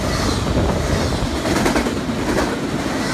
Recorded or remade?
recorded